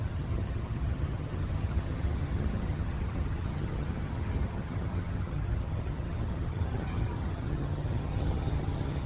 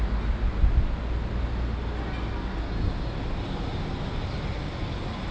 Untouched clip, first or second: second